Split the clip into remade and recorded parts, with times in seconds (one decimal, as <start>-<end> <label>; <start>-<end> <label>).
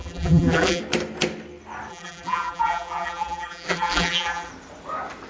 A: 0.0-0.8 remade; 0.8-1.9 recorded; 1.9-4.5 remade; 4.5-5.3 recorded